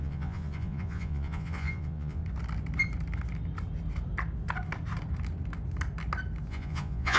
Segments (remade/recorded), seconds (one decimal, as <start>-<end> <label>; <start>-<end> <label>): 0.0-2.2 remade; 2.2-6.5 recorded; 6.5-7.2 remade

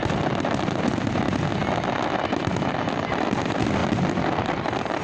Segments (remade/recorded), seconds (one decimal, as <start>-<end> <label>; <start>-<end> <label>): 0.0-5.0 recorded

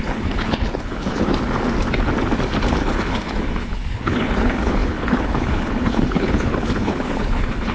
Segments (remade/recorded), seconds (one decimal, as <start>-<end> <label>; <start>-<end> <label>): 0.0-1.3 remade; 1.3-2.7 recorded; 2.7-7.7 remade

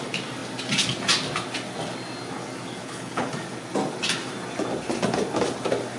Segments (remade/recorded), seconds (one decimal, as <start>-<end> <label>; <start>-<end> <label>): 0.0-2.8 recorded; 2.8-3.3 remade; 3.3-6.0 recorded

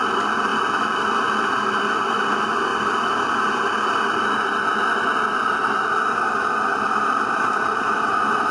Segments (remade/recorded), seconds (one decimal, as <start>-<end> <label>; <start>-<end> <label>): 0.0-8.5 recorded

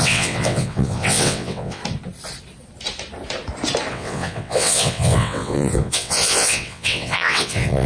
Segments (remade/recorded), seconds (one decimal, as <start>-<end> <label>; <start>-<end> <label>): 0.0-1.8 remade; 1.8-3.9 recorded; 3.9-7.9 remade

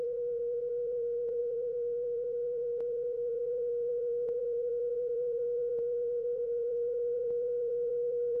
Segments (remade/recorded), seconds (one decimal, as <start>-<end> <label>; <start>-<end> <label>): 0.0-8.4 remade

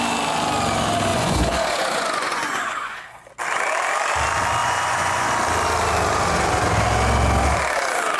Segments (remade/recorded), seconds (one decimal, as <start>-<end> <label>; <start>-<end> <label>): 0.0-1.1 recorded; 1.1-3.0 remade; 3.0-4.6 recorded; 4.6-5.3 remade; 5.3-8.2 recorded